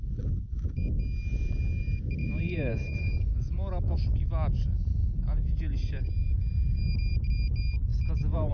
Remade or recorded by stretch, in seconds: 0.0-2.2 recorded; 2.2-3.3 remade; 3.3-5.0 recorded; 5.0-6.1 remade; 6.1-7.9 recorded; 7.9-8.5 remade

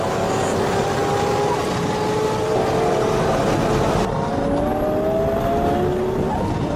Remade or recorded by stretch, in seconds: 0.0-6.8 recorded